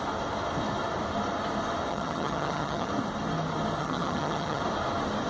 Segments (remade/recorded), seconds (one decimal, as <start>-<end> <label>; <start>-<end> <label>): 0.0-1.9 recorded; 1.9-2.9 remade; 2.9-3.8 recorded; 3.8-4.6 remade; 4.6-5.3 recorded